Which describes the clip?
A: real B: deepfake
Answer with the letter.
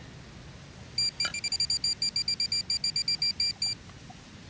A